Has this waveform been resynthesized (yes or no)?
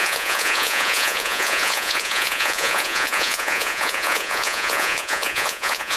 yes